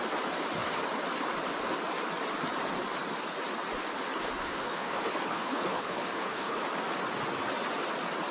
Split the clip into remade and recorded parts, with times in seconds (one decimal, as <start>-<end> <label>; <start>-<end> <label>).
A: 0.0-4.4 recorded; 4.4-6.6 remade; 6.6-8.3 recorded